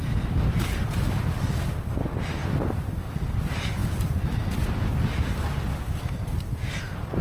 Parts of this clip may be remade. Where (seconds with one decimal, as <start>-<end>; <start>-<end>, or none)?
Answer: none

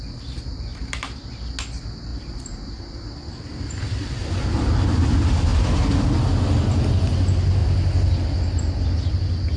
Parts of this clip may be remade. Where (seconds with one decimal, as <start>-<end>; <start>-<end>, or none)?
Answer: 0.7-1.3; 2.1-2.8; 5.5-6.2

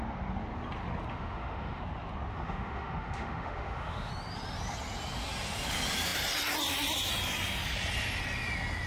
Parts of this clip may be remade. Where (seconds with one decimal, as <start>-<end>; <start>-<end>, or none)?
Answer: 1.1-1.8; 2.3-4.1

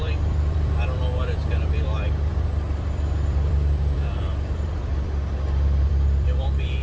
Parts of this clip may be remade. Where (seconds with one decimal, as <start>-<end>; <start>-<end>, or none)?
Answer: 0.0-6.8